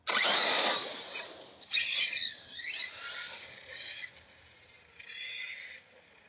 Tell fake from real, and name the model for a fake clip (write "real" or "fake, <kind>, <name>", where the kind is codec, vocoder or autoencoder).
real